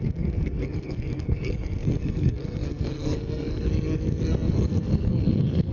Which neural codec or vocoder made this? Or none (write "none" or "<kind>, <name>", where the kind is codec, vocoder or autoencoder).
codec, SNAC